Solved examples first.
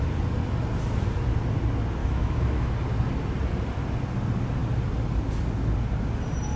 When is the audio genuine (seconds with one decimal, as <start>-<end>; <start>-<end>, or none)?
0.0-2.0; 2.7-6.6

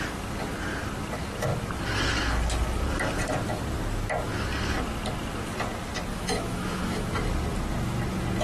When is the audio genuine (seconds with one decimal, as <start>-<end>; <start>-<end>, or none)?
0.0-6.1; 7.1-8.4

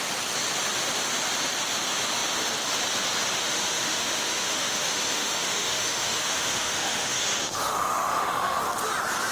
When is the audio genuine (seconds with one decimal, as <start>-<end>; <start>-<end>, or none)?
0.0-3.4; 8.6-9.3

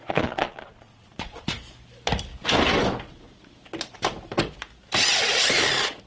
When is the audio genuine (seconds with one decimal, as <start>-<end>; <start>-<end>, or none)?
1.6-6.1